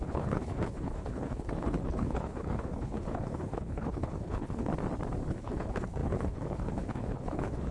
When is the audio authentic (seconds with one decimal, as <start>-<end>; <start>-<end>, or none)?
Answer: 4.7-5.3